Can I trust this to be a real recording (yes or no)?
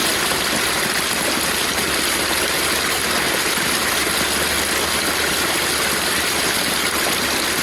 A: yes